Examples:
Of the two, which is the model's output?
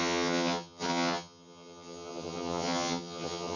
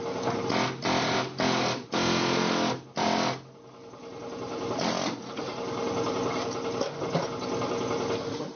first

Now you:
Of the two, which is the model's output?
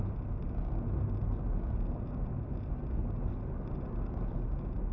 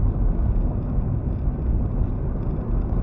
second